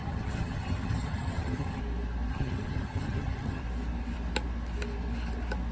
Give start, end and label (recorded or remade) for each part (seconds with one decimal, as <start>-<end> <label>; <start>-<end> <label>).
0.0-1.8 remade; 1.8-2.3 recorded; 2.3-3.6 remade; 3.6-5.7 recorded